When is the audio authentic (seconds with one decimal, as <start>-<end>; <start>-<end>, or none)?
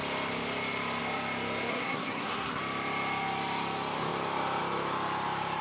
0.0-1.7; 2.6-5.6